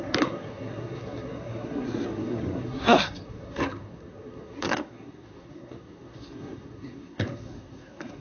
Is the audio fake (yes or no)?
yes